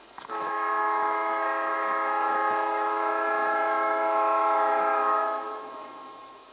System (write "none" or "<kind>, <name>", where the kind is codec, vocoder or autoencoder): autoencoder, DAC-VAE